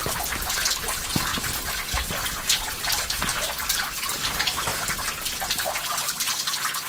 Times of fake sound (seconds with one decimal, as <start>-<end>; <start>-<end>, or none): 4.7-6.2